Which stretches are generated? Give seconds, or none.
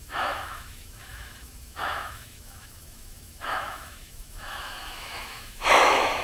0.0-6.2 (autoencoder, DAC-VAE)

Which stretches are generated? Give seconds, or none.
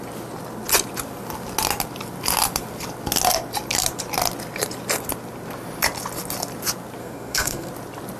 7.0-7.7 (codec, SNAC)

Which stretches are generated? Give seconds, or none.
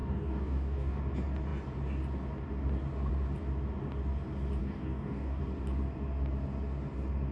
0.0-1.0 (codec, DAC); 4.6-5.4